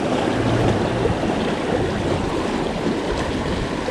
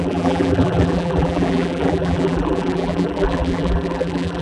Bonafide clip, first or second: first